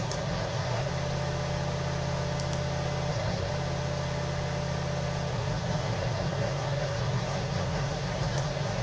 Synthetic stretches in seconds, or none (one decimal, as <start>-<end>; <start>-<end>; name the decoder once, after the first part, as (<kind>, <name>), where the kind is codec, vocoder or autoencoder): 0.0-0.9 (codec, SNAC); 3.1-3.5; 5.3-8.8